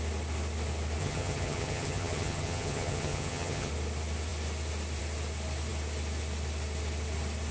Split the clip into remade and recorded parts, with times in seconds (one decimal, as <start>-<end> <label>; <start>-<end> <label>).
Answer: 0.0-1.0 recorded; 1.0-3.7 remade; 3.7-7.5 recorded